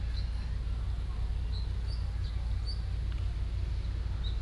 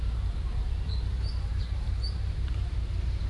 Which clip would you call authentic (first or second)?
first